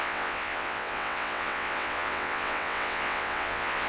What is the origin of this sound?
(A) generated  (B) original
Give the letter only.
A